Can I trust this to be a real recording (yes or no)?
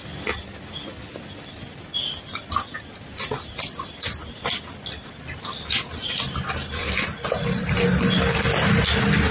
yes